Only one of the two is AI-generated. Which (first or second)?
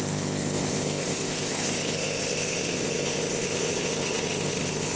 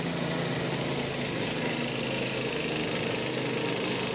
first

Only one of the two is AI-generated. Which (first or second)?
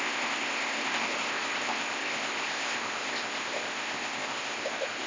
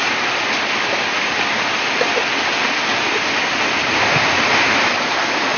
first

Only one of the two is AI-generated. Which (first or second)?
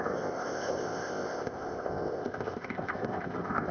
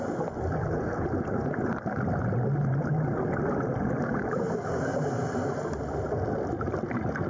first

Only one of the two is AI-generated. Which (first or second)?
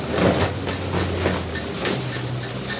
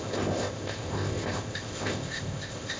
second